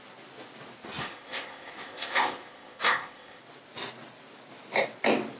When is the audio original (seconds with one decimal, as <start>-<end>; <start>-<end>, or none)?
0.0-1.0; 3.4-5.4